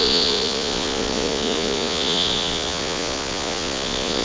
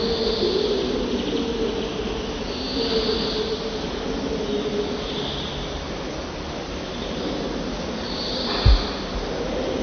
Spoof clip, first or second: first